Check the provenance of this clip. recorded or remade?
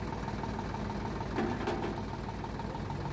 recorded